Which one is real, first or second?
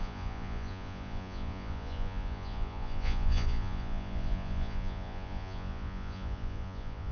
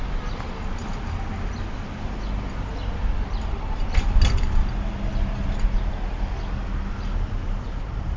second